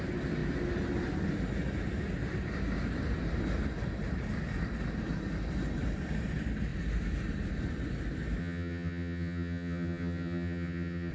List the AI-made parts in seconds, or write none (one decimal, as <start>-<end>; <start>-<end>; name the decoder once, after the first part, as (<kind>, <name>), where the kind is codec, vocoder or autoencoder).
8.4-11.1 (vocoder, HiFi-GAN)